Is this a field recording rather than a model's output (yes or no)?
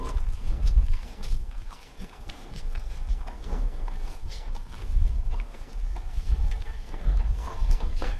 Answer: no